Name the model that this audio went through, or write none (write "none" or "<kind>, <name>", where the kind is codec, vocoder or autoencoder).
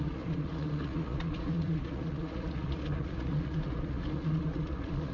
vocoder, Vocos